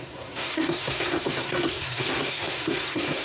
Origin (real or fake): fake